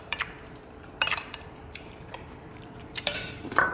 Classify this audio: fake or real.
fake